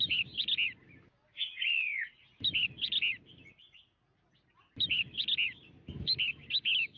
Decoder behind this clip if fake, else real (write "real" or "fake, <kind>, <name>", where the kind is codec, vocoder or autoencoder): real